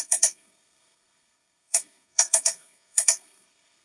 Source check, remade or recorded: remade